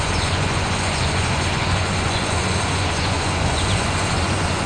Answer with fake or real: fake